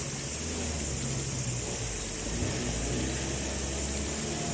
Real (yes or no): yes